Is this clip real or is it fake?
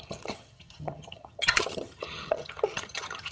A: fake